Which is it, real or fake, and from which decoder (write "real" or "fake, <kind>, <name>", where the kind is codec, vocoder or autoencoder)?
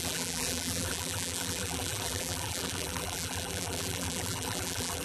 fake, vocoder, BigVGAN v2